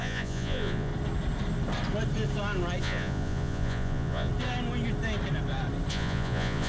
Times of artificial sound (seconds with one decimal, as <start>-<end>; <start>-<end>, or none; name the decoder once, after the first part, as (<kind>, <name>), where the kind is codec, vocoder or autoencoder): 0.0-0.9 (vocoder, Vocos); 2.8-4.3; 5.9-6.7